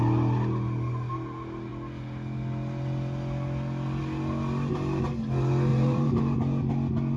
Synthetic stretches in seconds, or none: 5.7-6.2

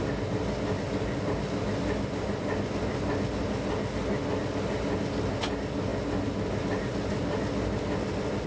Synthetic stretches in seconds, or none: none

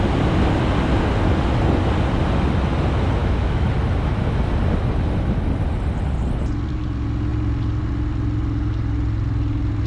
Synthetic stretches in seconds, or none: 3.2-3.7

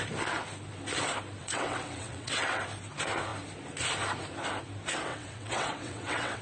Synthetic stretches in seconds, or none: 1.4-2.6; 5.1-6.4

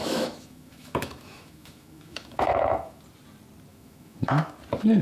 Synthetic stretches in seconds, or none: 0.0-3.0; 3.7-4.6